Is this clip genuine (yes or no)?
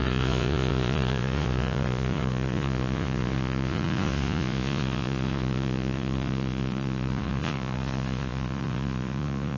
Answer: no